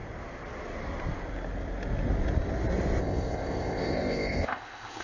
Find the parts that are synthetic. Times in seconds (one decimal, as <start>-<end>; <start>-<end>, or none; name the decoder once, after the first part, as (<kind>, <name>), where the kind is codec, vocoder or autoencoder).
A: 3.0-5.0 (codec, ZipCodec)